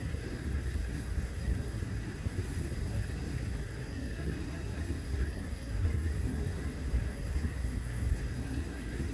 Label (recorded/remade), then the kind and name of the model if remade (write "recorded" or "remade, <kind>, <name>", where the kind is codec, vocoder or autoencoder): remade, codec, SNAC